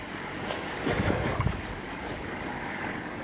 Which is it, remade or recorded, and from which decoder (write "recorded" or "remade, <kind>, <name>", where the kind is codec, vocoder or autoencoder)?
remade, codec, DAC